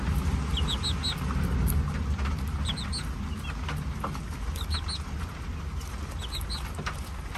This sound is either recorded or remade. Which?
recorded